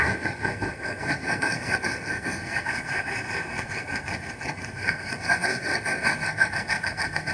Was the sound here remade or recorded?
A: remade